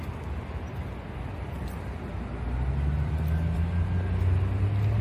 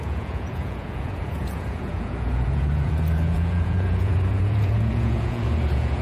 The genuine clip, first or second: first